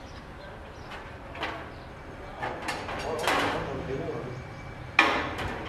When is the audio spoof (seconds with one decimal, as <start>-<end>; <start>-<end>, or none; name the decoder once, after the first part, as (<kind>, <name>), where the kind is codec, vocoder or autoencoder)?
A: none